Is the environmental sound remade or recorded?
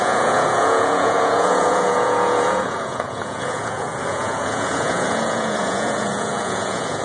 remade